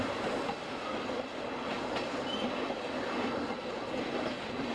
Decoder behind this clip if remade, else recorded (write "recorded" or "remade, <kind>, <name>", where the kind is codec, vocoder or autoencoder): recorded